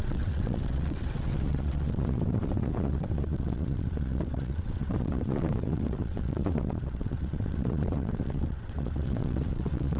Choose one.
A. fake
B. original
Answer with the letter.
A